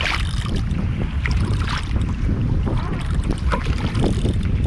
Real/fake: fake